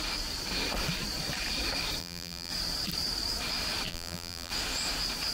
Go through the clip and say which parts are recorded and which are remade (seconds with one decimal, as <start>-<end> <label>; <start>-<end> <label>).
0.0-2.0 recorded; 2.0-2.5 remade; 2.5-3.9 recorded; 3.9-4.5 remade; 4.5-5.3 recorded